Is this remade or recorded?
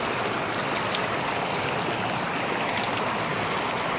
recorded